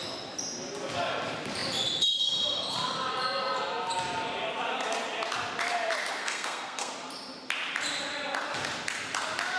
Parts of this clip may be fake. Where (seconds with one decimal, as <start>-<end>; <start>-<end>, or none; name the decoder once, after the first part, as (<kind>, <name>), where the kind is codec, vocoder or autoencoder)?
6.2-6.9 (codec, SNAC)